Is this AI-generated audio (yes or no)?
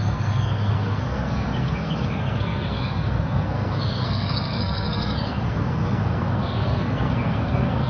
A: yes